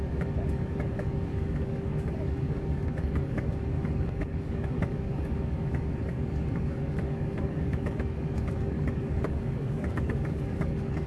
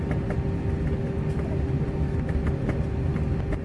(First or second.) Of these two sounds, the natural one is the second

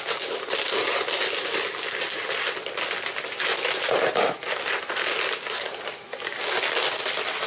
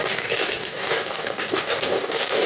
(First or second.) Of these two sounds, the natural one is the first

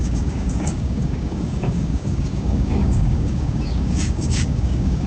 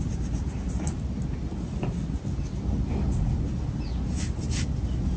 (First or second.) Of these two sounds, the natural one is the second